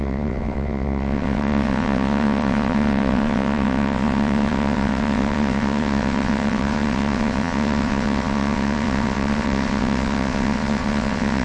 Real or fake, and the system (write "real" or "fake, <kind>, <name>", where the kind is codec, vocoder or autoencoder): fake, vocoder, WaveNeXt